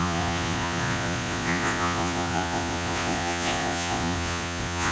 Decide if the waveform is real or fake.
fake